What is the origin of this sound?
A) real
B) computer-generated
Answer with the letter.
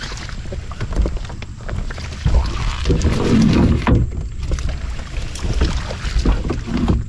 A